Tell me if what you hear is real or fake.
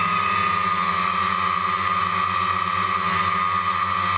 real